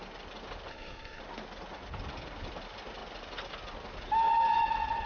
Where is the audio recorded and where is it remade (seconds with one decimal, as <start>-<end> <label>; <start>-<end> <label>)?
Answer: 0.0-0.7 recorded; 0.7-1.2 remade; 1.2-5.1 recorded